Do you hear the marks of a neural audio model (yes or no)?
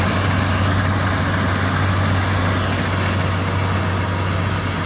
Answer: no